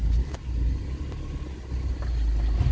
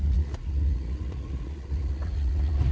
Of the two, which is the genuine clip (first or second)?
first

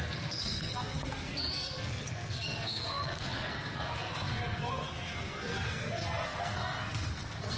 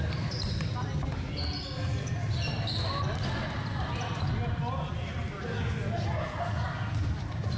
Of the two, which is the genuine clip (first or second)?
second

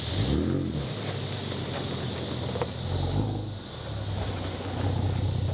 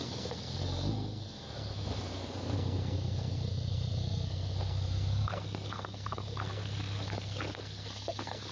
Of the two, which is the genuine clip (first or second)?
first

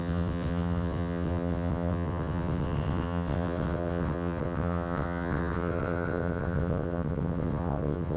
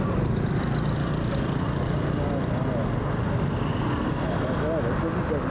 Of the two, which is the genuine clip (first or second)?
second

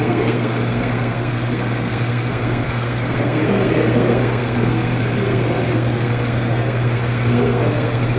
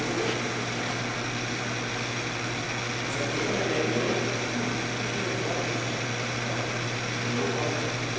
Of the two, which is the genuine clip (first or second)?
second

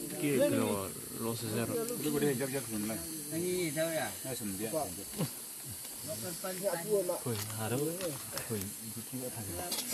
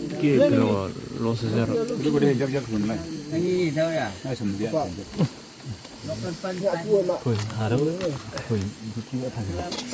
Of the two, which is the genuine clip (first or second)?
first